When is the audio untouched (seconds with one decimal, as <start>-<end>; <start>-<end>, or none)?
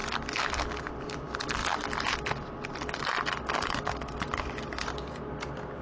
0.0-5.8